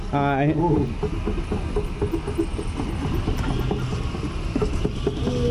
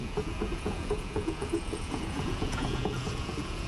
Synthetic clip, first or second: second